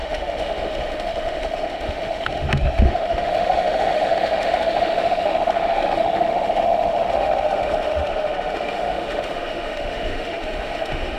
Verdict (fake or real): fake